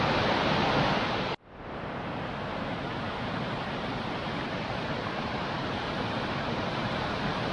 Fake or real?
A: fake